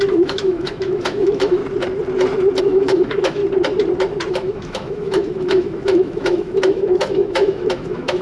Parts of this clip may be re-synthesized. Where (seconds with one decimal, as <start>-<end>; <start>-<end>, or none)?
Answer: 0.0-1.6; 2.6-3.4; 4.3-8.2